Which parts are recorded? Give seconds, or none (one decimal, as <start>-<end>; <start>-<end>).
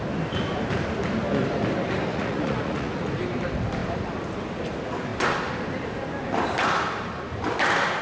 0.0-2.1; 3.1-8.0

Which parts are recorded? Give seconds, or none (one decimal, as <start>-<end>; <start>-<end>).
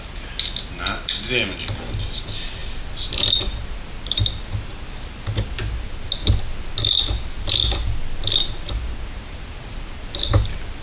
0.0-10.8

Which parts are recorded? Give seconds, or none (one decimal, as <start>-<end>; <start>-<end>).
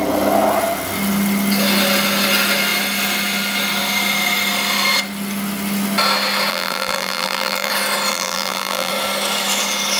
0.0-6.5; 7.7-8.1; 8.9-10.0